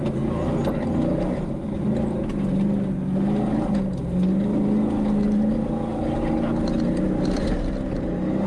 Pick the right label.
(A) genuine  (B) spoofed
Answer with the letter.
A